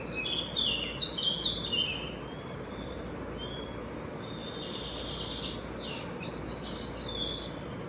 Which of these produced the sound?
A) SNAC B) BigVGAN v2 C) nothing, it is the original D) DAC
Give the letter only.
C